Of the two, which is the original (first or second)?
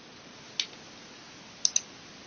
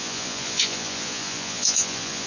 first